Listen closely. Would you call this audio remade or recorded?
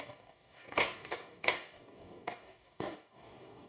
remade